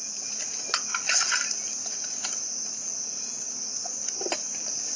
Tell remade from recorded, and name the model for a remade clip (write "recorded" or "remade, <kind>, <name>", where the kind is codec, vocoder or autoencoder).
recorded